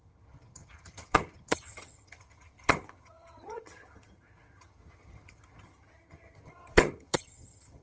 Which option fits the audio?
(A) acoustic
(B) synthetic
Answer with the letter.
B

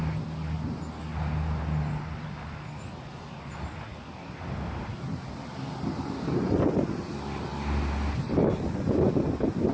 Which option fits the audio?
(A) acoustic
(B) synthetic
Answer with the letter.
A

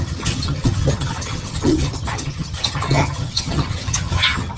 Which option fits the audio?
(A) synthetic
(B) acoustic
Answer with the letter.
A